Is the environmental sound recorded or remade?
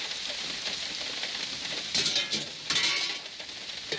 recorded